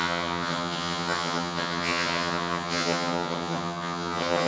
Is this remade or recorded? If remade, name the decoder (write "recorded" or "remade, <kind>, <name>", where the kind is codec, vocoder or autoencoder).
remade, vocoder, HiFi-GAN